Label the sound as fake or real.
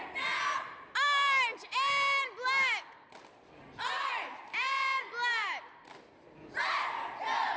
real